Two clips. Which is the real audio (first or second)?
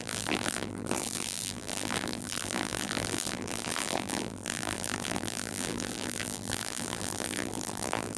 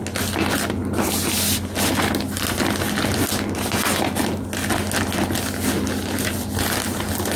second